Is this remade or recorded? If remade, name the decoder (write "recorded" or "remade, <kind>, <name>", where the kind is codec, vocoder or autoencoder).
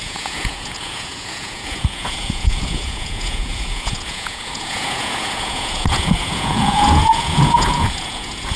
remade, vocoder, Vocos